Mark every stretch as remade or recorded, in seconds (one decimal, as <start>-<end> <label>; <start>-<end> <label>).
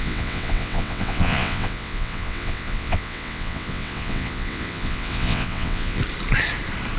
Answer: 0.0-6.0 remade; 6.0-7.0 recorded